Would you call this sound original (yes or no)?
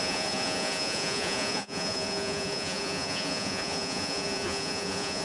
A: no